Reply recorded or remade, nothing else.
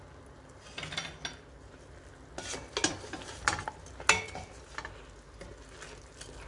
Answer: recorded